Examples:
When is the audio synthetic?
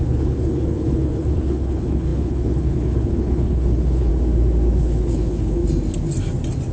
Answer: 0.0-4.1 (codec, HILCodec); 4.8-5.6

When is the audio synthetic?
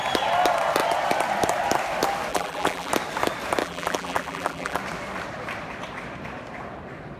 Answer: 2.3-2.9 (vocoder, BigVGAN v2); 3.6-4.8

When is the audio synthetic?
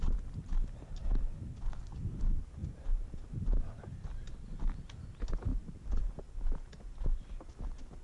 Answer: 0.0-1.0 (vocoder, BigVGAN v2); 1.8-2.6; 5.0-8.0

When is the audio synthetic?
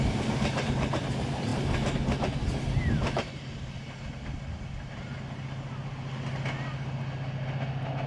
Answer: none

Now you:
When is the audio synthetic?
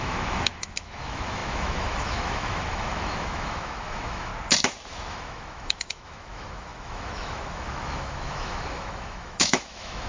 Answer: 0.0-4.3 (autoencoder, DAC-VAE); 5.1-10.1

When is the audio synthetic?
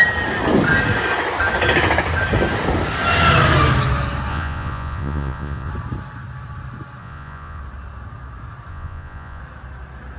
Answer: 4.3-5.7 (vocoder, Vocos); 7.0-7.6; 8.7-9.4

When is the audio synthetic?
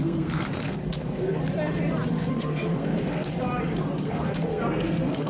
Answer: 0.0-1.4 (codec, SNAC); 2.3-3.3; 4.0-5.3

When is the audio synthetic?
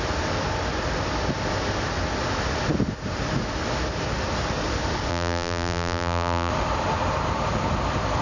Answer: 5.1-6.5 (vocoder, BigVGAN v2)